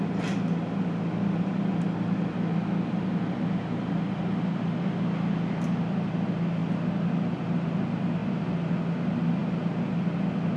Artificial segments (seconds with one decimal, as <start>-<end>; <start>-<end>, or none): 8.2-8.8